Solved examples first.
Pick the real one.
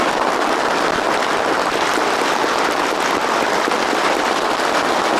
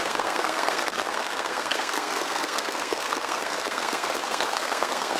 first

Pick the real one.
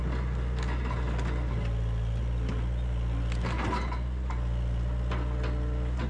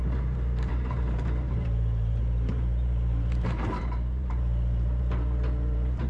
first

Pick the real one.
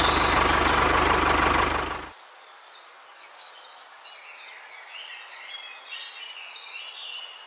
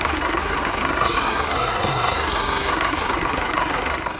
first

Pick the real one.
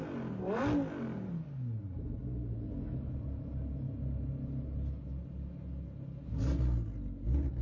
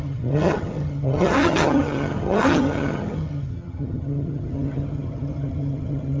first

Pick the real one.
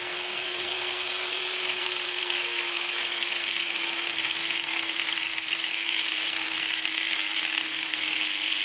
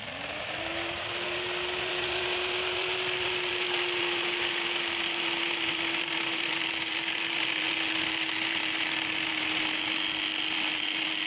second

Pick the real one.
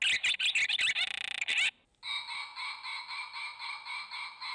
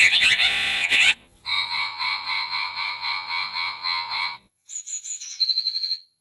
first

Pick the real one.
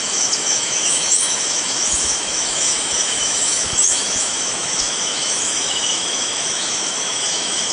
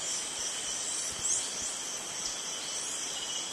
second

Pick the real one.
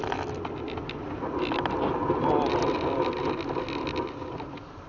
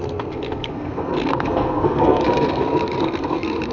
first